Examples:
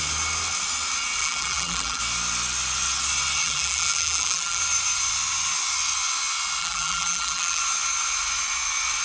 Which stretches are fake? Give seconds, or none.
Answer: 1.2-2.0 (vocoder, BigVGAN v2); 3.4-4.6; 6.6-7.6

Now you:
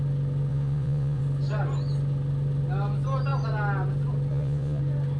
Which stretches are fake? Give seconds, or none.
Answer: 0.5-1.2 (vocoder, Vocos); 4.3-4.8

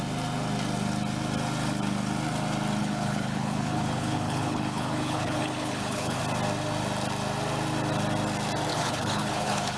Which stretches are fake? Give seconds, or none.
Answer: 2.8-6.2 (codec, HILCodec); 8.7-9.8